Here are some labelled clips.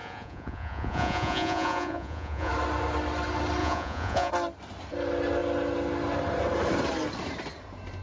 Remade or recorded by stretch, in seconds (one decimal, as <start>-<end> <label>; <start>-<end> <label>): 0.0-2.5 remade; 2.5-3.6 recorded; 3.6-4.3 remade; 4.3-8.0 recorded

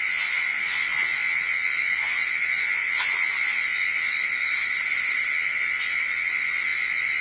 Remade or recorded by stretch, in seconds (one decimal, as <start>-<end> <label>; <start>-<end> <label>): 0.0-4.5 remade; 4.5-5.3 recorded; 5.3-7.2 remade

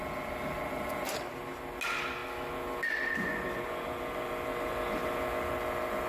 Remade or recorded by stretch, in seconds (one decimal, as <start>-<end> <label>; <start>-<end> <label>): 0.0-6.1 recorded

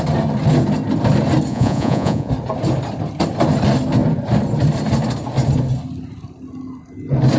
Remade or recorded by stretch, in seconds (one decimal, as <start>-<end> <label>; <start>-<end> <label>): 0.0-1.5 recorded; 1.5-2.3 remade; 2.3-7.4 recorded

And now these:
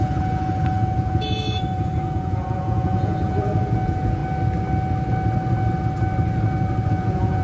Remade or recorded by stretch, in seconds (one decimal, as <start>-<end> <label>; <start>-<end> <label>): 0.0-4.2 remade; 4.2-6.9 recorded; 6.9-7.4 remade

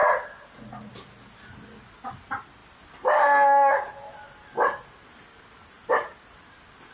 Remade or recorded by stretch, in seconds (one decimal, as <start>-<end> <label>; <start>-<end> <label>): 0.0-6.9 recorded

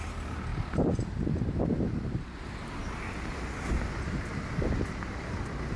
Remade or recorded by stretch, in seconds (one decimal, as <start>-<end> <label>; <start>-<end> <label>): 0.0-5.8 recorded

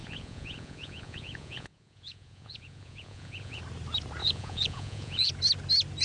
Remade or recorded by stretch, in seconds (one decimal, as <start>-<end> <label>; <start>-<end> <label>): 0.0-3.6 remade; 3.6-4.2 recorded; 4.2-5.3 remade; 5.3-6.0 recorded